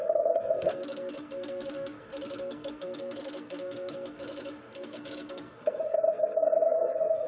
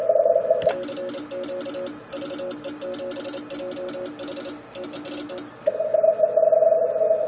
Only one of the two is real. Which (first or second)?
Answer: second